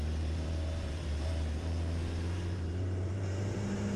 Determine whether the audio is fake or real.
fake